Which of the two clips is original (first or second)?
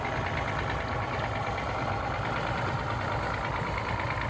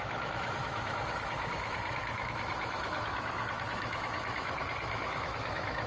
first